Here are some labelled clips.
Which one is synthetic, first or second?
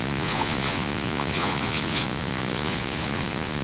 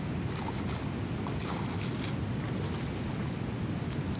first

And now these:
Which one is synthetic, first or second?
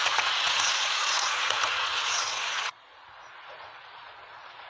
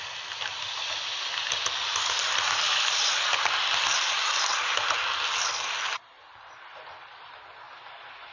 first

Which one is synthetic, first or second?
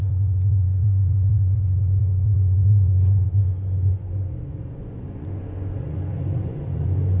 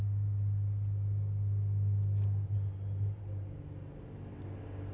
first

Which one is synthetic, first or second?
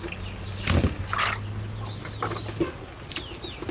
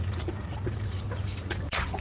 second